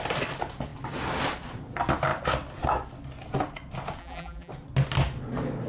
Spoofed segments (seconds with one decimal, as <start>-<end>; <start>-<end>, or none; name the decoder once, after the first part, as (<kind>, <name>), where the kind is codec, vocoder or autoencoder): 4.0-4.5 (vocoder, BigVGAN v2)